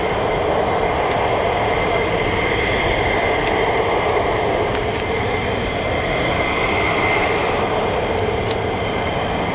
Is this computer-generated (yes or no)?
no